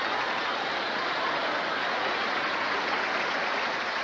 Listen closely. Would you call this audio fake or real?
fake